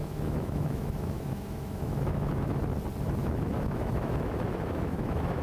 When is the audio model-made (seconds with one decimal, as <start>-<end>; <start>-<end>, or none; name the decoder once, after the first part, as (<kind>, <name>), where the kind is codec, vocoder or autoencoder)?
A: 0.0-2.6 (autoencoder, DAC-VAE); 3.2-5.4